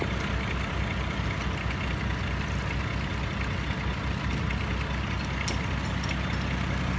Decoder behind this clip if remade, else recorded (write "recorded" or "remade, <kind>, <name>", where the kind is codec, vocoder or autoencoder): recorded